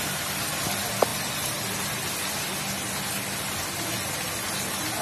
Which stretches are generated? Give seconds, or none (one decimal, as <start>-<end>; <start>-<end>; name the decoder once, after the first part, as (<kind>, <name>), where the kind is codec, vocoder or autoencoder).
none